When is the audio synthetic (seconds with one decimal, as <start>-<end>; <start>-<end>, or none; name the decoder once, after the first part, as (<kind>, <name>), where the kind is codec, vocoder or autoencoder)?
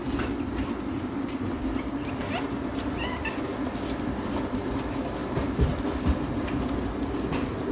none